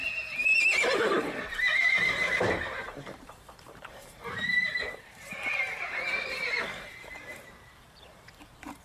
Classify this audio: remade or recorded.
remade